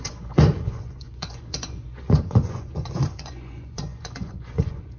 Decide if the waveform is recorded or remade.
remade